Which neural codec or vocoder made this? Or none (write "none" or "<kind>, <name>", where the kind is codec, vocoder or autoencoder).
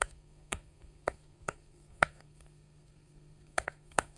codec, SNAC